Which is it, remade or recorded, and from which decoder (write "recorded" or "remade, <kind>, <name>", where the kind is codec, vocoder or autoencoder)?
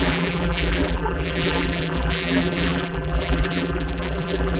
remade, vocoder, BigVGAN v2